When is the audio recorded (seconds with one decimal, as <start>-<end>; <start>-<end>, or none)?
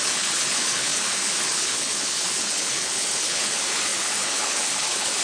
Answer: none